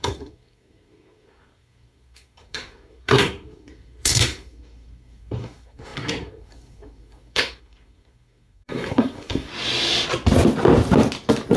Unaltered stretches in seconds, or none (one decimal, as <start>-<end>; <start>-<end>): 9.5-11.6